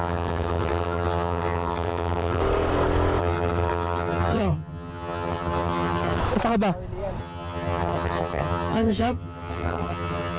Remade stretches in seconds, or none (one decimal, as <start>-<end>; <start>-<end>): 0.0-2.4; 3.2-6.2; 7.2-10.4